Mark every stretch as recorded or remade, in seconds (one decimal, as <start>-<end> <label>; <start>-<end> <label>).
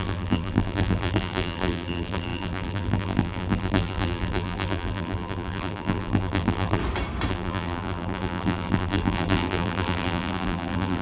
0.0-6.8 remade; 6.8-7.3 recorded; 7.3-11.0 remade